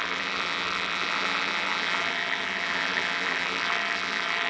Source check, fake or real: fake